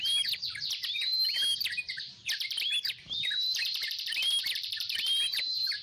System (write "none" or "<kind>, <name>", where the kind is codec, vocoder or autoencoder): vocoder, BigVGAN v2